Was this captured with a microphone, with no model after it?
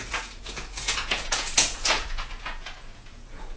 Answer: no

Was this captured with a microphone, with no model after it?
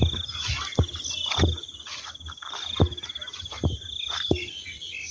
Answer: yes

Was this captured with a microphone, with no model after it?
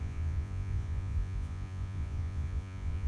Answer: no